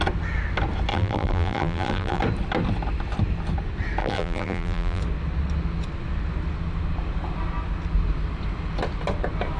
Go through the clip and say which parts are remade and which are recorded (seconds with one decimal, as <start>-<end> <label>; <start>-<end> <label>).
0.0-0.9 recorded; 0.9-2.2 remade; 2.2-4.0 recorded; 4.0-5.0 remade; 5.0-9.6 recorded